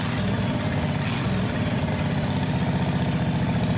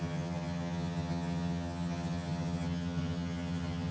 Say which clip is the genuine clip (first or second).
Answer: first